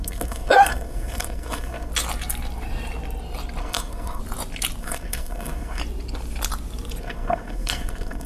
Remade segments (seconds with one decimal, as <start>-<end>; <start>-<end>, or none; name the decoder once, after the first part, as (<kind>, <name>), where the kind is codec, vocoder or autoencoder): 0.0-1.9 (codec, SNAC); 3.6-4.2; 4.8-5.8; 7.0-8.3